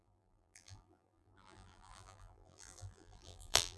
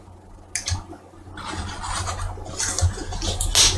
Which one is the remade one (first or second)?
first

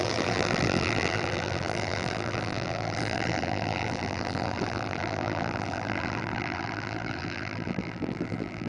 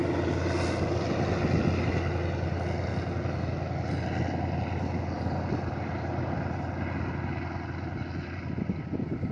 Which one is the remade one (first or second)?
first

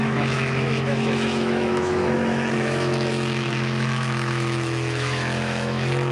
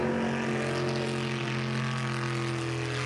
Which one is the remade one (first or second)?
first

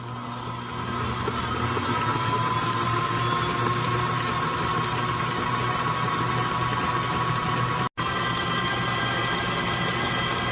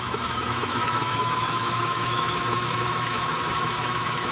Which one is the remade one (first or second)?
second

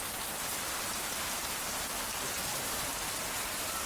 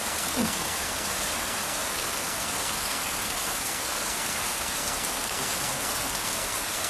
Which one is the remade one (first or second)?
second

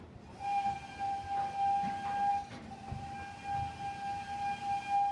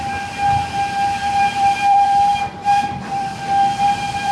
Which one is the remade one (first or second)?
second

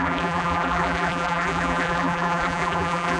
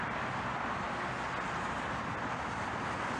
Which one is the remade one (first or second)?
first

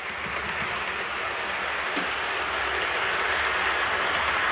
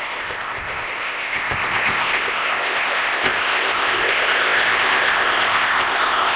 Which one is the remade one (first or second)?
second